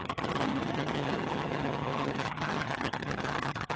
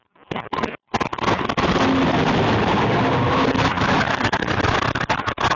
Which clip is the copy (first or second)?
first